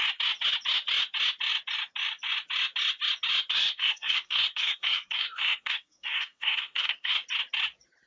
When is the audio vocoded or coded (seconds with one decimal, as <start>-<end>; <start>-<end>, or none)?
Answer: 3.5-7.2